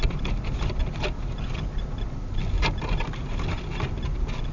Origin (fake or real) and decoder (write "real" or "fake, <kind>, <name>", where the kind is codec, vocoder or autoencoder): real